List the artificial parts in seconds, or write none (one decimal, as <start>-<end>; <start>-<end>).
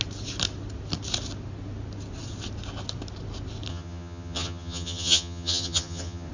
3.7-6.3